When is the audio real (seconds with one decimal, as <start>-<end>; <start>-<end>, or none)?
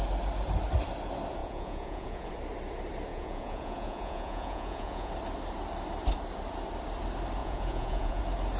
0.0-1.4; 2.3-3.1; 5.1-7.4; 8.2-8.6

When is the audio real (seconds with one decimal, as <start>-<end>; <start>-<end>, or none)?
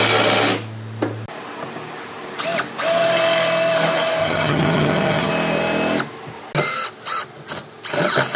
0.0-4.2; 5.3-8.4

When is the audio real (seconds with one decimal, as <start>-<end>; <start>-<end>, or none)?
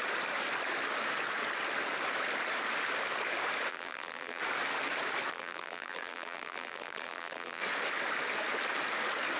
0.0-3.7; 4.4-5.3; 7.6-9.4